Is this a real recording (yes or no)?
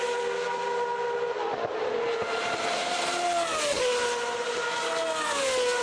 yes